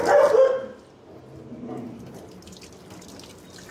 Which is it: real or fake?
real